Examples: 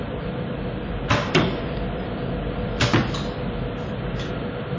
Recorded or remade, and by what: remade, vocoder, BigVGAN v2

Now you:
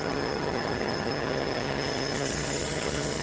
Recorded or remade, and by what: remade, vocoder, HiFi-GAN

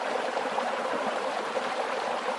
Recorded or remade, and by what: remade, vocoder, BigVGAN v2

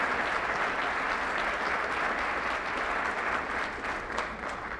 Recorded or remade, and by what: recorded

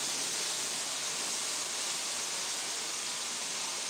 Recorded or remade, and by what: recorded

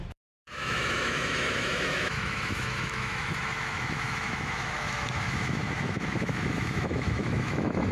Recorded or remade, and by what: remade, autoencoder, DAC-VAE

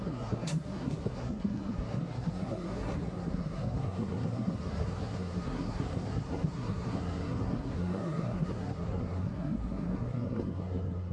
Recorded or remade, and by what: remade, codec, SNAC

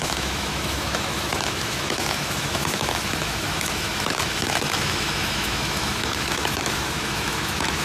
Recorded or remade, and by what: remade, autoencoder, DAC-VAE